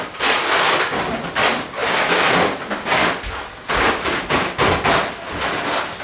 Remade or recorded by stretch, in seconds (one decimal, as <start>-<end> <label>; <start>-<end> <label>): 0.0-6.0 recorded